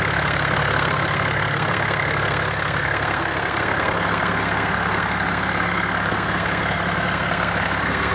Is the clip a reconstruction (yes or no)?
yes